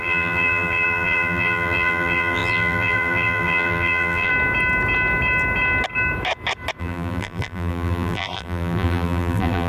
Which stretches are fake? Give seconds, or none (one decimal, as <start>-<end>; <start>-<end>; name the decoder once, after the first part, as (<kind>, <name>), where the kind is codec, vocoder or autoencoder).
0.0-4.3 (vocoder, BigVGAN v2); 6.8-9.7